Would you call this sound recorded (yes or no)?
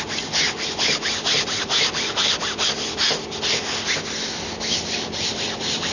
yes